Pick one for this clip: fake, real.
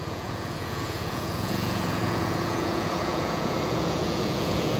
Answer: fake